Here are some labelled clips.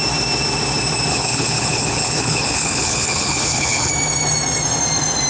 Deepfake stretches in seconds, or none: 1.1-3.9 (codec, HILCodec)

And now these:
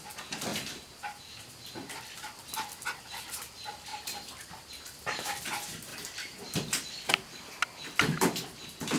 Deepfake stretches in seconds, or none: 0.5-1.5 (vocoder, BigVGAN v2); 3.9-4.7; 5.9-7.1